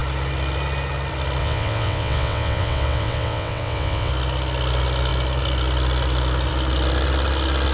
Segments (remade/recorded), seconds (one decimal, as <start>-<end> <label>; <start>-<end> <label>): 0.0-1.4 recorded; 1.4-4.1 remade; 4.1-7.7 recorded